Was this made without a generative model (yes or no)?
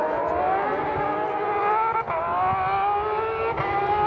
yes